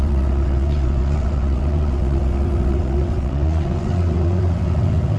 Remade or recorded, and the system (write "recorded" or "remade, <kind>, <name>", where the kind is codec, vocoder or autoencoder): remade, vocoder, WaveNeXt